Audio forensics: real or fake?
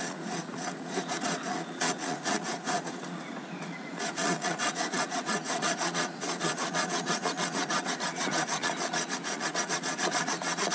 fake